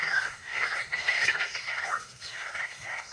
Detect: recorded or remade remade